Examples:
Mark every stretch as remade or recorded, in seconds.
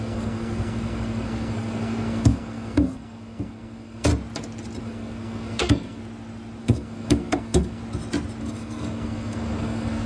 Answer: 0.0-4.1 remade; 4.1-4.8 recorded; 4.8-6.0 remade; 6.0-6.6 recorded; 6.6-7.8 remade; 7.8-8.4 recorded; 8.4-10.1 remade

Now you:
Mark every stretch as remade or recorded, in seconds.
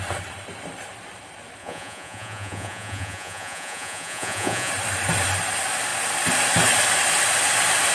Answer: 0.0-1.6 recorded; 1.6-4.7 remade; 4.7-7.9 recorded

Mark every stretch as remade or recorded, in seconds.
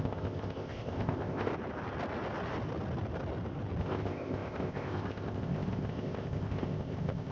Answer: 0.0-1.5 remade; 1.5-3.8 recorded; 3.8-7.3 remade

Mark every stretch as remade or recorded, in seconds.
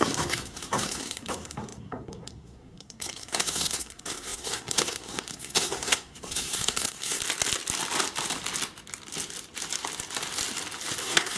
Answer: 0.0-7.2 remade; 7.2-11.0 recorded; 11.0-11.4 remade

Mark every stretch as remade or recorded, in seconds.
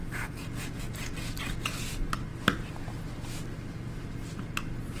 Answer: 0.0-0.8 remade; 0.8-5.0 recorded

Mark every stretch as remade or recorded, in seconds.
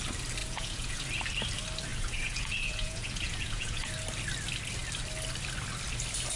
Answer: 0.0-0.4 recorded; 0.4-1.0 remade; 1.0-1.9 recorded; 1.9-3.9 remade; 3.9-6.4 recorded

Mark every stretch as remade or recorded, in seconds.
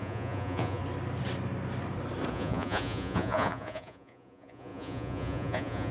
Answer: 0.0-0.8 remade; 0.8-2.3 recorded; 2.3-5.9 remade